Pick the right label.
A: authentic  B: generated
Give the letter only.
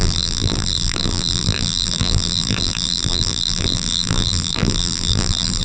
B